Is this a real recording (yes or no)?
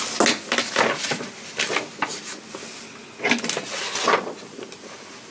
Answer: yes